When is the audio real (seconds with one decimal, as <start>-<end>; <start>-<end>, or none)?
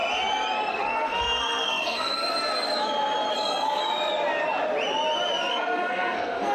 0.0-0.7; 2.1-3.3; 3.8-5.5